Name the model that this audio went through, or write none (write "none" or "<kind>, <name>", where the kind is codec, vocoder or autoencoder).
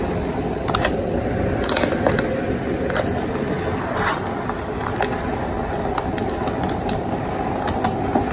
none